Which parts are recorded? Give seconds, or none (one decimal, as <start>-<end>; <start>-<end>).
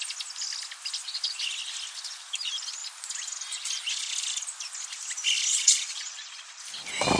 0.0-5.5; 6.6-7.2